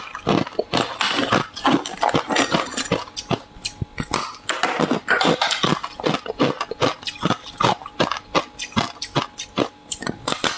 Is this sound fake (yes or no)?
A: no